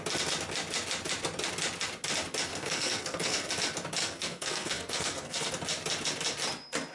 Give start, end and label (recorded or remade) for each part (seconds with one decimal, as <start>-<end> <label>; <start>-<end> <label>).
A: 0.0-2.5 recorded; 2.5-3.5 remade; 3.5-4.0 recorded; 4.0-5.5 remade; 5.5-6.9 recorded